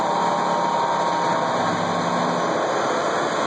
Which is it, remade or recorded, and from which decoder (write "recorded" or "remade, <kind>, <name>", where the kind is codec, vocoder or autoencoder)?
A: recorded